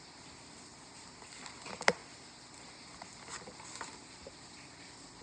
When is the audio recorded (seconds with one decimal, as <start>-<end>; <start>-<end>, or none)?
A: 0.0-5.2